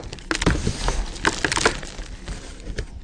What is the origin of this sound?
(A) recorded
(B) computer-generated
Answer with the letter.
A